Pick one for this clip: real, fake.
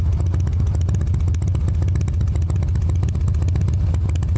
real